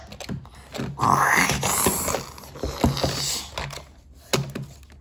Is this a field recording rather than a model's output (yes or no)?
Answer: yes